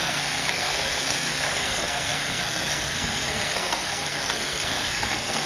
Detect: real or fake fake